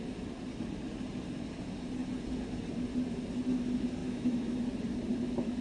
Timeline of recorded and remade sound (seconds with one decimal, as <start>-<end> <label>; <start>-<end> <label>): 0.0-4.0 recorded; 4.0-4.6 remade; 4.6-5.6 recorded